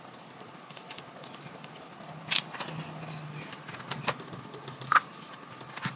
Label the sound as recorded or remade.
recorded